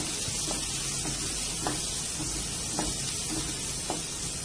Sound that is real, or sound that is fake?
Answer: real